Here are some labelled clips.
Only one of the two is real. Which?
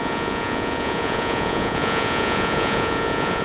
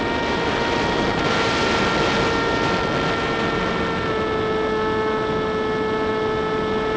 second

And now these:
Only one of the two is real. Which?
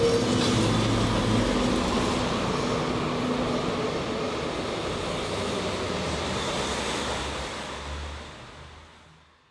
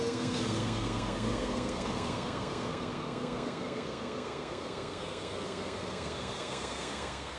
first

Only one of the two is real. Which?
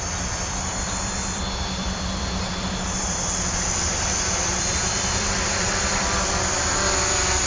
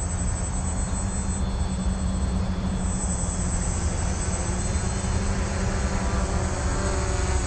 second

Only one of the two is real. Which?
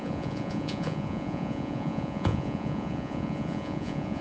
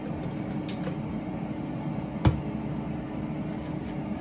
second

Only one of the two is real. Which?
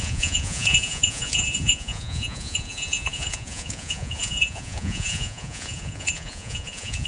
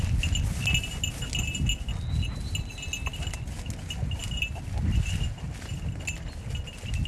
second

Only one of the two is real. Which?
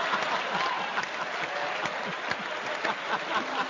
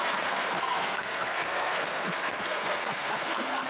first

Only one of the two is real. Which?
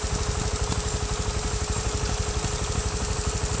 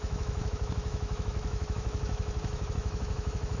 first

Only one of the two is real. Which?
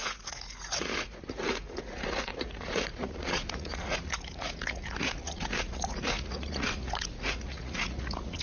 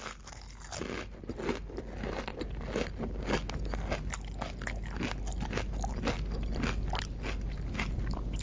second